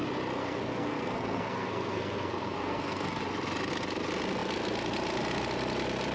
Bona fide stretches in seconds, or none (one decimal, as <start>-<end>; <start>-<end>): 0.0-0.4; 3.2-6.1